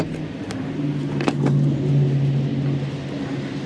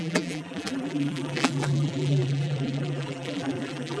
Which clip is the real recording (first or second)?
first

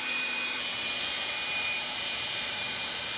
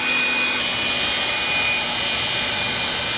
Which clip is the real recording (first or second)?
second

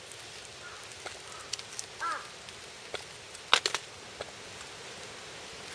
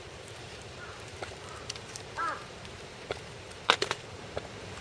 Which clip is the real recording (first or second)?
first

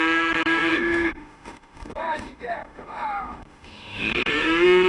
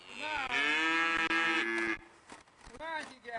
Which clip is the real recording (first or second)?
second